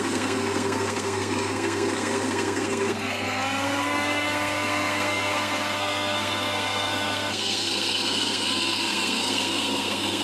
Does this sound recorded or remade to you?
remade